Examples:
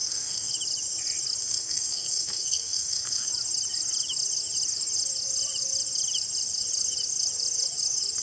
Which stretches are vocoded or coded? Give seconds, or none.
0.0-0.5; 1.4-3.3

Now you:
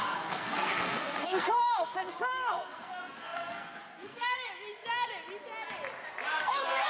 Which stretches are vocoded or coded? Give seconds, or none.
0.0-4.5; 6.4-6.9

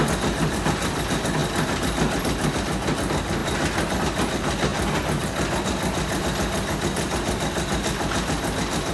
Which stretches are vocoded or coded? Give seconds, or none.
none

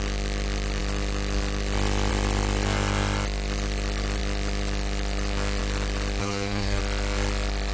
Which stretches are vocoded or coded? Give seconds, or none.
6.2-6.8